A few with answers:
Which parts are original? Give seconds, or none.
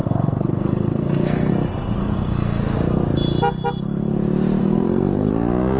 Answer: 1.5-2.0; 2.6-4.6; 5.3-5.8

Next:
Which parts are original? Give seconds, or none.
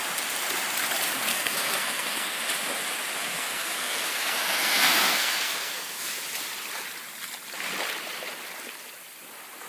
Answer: 0.0-1.3; 2.4-3.2; 6.1-9.7